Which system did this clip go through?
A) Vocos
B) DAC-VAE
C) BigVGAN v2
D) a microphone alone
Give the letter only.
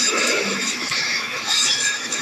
B